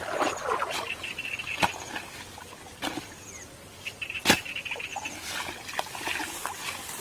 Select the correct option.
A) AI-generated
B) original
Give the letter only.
B